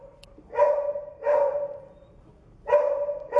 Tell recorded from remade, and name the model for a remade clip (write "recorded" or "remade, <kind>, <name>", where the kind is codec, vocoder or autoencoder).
remade, vocoder, BigVGAN v2